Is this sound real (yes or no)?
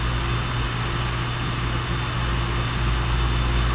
yes